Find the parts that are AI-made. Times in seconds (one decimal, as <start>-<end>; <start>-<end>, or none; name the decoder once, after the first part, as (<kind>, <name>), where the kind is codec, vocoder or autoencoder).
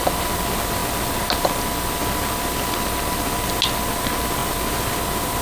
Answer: none